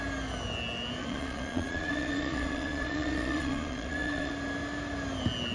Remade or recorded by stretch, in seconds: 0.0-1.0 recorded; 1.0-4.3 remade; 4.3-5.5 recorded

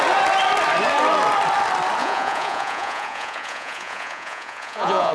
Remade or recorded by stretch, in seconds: 0.0-2.0 recorded; 2.0-5.1 remade

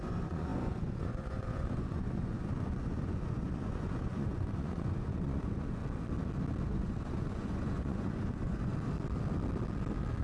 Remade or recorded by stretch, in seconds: 0.0-5.8 remade; 5.8-6.6 recorded; 6.6-8.7 remade; 8.7-10.2 recorded